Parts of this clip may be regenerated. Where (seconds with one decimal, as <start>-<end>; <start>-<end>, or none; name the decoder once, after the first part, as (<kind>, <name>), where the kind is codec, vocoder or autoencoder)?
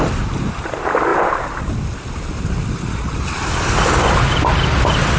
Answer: none